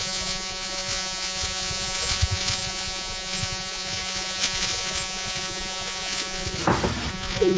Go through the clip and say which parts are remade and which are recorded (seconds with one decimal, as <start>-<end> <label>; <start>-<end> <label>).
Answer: 0.0-6.6 remade; 6.6-7.1 recorded; 7.1-7.6 remade